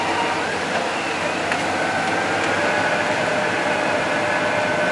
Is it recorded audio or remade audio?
recorded